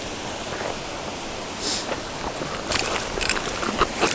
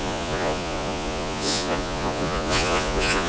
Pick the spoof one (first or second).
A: second